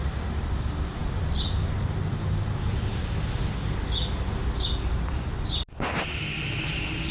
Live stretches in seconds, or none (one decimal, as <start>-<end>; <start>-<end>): 0.0-7.1